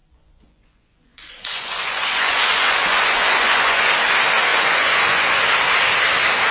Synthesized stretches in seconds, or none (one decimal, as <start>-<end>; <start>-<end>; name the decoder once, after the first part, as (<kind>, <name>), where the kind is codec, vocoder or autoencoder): 0.0-3.9 (vocoder, Vocos); 4.5-5.5